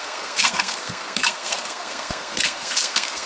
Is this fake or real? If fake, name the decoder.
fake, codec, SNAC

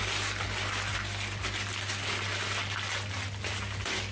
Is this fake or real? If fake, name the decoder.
real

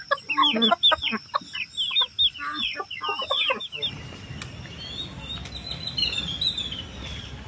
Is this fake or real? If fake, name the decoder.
real